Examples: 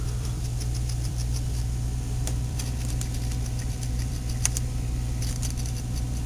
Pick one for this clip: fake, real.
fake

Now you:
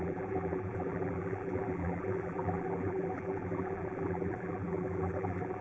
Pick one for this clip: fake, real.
fake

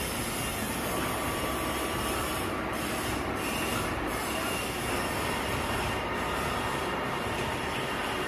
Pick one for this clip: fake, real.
fake